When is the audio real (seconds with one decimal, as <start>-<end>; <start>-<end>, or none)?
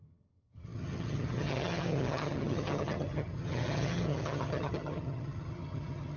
none